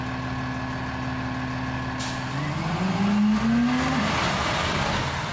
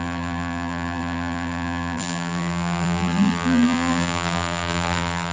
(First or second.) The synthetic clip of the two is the second